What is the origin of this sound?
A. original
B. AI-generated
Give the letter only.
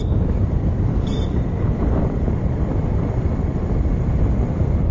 A